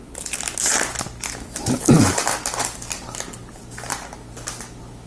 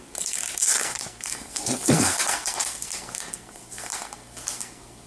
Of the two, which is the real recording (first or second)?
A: first